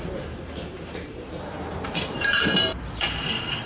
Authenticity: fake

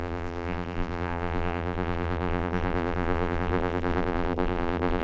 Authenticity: fake